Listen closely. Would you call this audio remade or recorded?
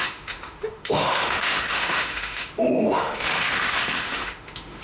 remade